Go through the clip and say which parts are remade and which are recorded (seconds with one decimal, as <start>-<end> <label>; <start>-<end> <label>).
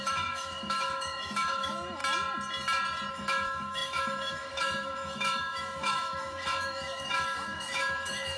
0.0-2.0 remade; 2.0-3.1 recorded; 3.1-8.4 remade